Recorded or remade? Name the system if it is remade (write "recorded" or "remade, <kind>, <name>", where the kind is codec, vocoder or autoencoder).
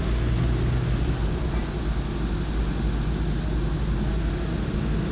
recorded